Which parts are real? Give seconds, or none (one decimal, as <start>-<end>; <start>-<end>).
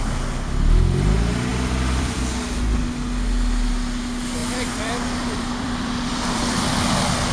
0.0-1.5; 2.2-4.4; 6.6-7.3